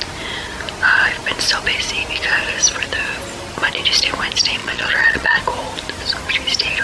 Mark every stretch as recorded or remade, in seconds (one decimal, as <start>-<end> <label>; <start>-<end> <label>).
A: 0.0-4.6 recorded; 4.6-5.4 remade; 5.4-6.8 recorded